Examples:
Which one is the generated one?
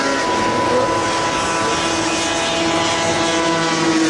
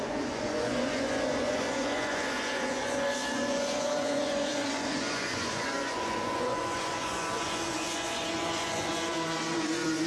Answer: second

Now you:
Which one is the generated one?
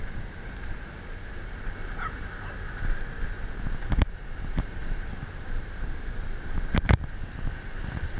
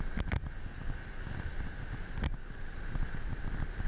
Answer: first